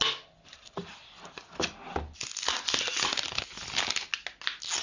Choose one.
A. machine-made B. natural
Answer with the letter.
B